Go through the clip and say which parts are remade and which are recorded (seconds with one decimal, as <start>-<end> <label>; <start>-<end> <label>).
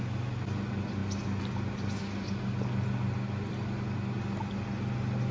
0.0-5.3 recorded